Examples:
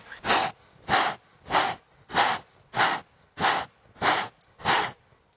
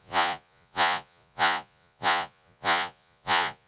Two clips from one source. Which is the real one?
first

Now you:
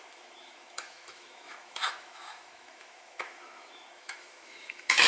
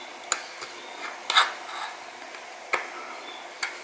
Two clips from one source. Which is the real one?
second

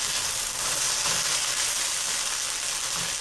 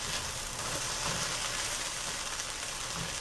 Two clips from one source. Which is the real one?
first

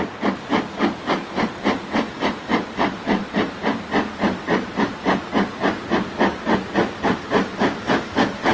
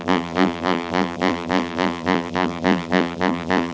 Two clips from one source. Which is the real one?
first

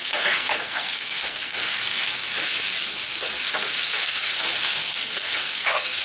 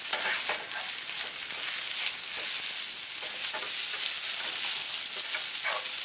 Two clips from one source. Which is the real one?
second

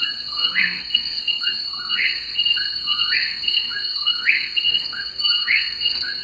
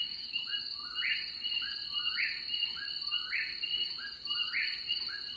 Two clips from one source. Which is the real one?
second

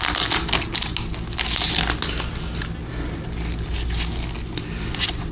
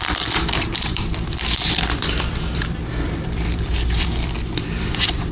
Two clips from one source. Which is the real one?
first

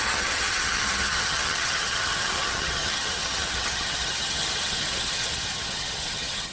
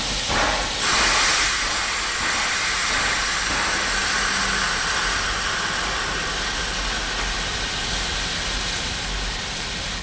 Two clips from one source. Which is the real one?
second